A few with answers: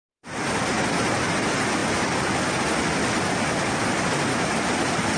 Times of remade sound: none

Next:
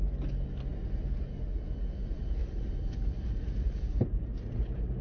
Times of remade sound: 0.7-1.4 (vocoder, BigVGAN v2); 2.4-5.0

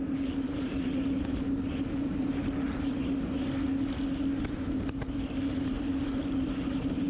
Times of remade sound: 0.0-3.0 (vocoder, BigVGAN v2); 4.5-7.1